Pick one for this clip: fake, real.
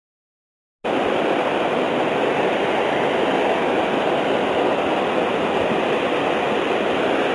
real